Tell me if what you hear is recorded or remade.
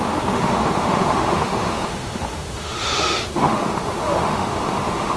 remade